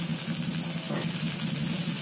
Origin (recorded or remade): recorded